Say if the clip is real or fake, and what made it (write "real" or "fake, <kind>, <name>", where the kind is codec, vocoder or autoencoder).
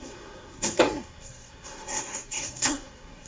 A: fake, codec, SNAC